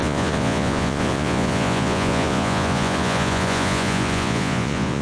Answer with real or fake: fake